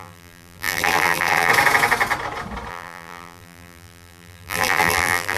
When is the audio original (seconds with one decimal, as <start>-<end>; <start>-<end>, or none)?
1.5-2.7